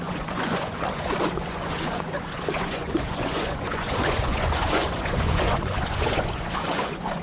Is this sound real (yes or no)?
no